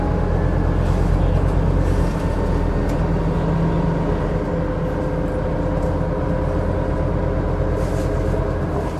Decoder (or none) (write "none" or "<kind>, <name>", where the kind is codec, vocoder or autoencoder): none